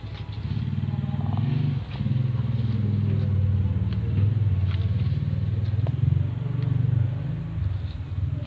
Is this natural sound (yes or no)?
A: yes